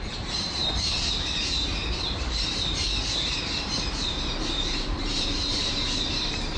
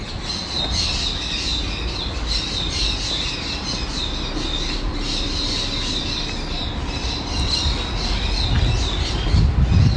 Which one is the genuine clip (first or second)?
second